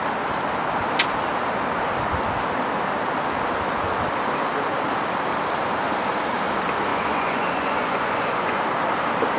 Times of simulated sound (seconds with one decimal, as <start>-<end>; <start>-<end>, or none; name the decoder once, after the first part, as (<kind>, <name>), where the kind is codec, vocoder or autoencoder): 6.9-8.6 (vocoder, Vocos)

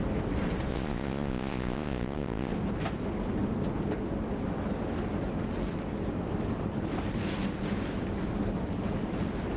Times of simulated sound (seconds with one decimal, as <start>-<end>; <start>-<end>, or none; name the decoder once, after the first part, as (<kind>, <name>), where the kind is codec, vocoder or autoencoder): 0.7-2.5 (vocoder, Vocos)

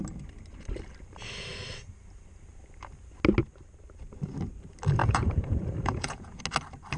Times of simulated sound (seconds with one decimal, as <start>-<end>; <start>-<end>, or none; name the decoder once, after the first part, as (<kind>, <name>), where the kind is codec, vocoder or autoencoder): 5.0-6.4 (vocoder, Vocos)

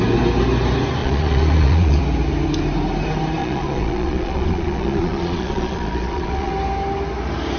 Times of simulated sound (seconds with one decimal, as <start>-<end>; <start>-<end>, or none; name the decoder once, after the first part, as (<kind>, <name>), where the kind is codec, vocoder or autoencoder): 1.0-2.0 (vocoder, Vocos); 3.4-6.5

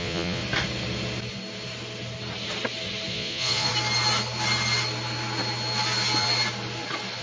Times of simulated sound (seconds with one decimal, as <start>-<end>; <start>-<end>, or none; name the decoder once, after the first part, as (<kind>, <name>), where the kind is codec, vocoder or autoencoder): 0.0-0.4 (vocoder, Vocos); 3.1-3.7

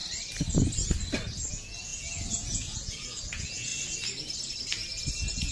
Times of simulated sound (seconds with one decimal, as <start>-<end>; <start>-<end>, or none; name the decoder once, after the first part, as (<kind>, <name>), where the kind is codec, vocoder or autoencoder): 1.5-3.7 (vocoder, Vocos); 5.1-5.5